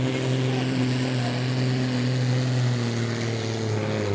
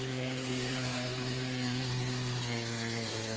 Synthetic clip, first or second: second